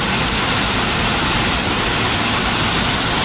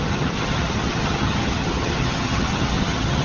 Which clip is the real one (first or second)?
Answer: first